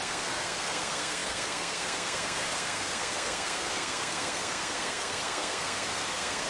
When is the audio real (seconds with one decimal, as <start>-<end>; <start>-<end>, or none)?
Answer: none